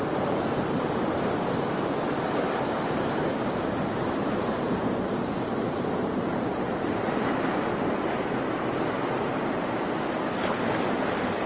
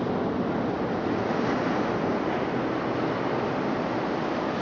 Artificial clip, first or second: first